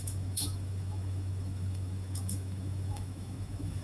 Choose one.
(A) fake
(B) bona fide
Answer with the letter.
A